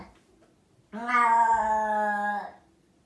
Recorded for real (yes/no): yes